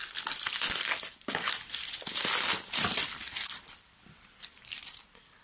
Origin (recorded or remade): remade